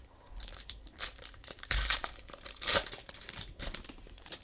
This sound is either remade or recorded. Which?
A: remade